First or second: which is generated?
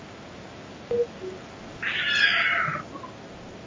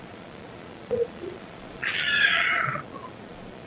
second